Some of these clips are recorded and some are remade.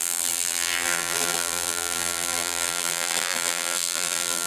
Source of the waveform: remade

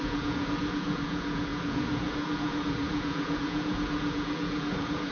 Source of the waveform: remade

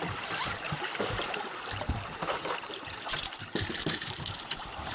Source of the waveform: remade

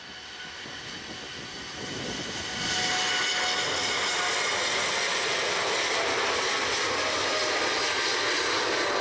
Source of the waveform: recorded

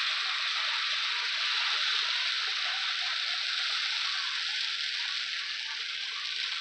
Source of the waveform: recorded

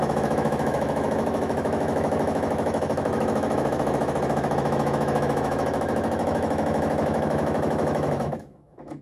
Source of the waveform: remade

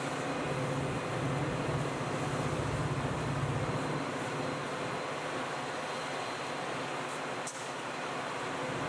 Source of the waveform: recorded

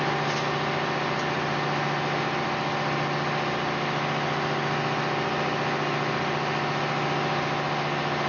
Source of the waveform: recorded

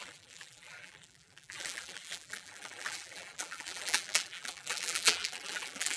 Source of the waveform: remade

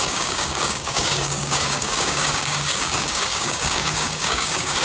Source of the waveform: remade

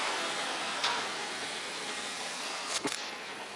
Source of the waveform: remade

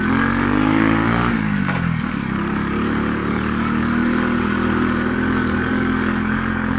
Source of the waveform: remade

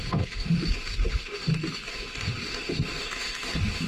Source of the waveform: remade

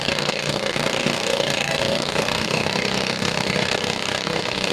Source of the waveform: remade